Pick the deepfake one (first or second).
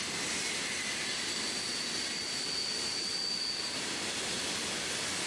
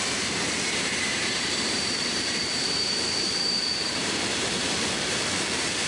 second